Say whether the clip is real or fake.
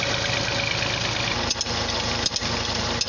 real